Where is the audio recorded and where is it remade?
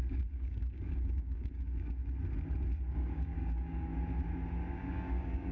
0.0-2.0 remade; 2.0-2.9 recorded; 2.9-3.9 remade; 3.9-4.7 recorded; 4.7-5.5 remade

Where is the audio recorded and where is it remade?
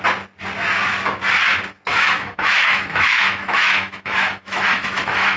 0.0-1.9 recorded; 1.9-5.4 remade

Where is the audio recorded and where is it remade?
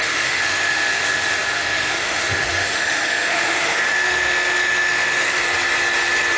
0.0-5.4 remade; 5.4-6.4 recorded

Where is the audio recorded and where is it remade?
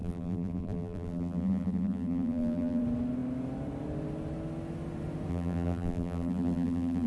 0.0-2.8 remade; 2.8-5.3 recorded; 5.3-7.1 remade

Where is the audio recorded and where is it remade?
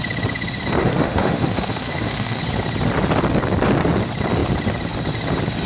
0.0-0.8 recorded; 0.8-2.4 remade; 2.4-5.7 recorded